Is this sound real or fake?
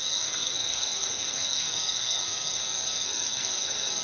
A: fake